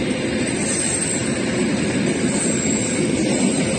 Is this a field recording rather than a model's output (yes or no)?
yes